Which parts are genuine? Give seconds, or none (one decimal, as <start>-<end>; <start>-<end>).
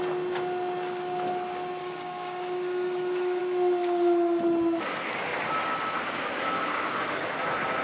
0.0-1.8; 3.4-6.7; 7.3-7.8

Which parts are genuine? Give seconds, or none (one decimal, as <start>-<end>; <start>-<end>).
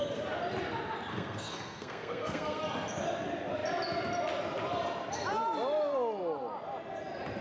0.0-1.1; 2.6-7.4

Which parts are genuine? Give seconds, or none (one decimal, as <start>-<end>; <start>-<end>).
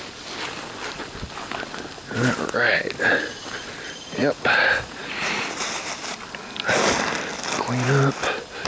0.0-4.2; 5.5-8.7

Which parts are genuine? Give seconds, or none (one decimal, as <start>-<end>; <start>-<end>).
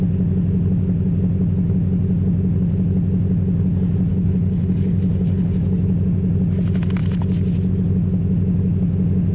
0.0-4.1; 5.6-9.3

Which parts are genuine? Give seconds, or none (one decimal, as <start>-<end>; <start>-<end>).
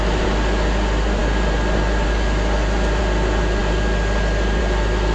0.0-5.1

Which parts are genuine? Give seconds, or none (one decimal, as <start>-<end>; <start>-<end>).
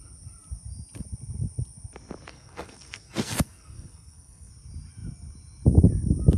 0.0-2.3; 4.5-6.4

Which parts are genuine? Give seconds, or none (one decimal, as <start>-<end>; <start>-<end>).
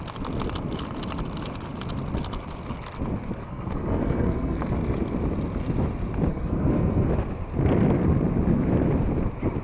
0.0-3.4; 4.7-6.3; 7.1-9.6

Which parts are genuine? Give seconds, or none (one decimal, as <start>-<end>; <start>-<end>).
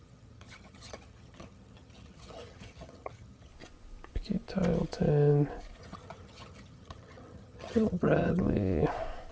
3.5-5.8; 8.4-9.3